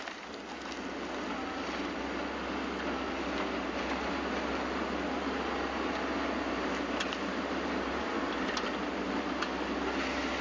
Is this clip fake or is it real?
real